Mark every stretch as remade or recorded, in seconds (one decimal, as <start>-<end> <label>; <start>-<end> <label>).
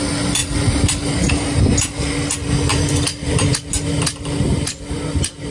0.0-0.4 recorded; 0.4-1.3 remade; 1.3-2.7 recorded; 2.7-3.3 remade; 3.3-5.5 recorded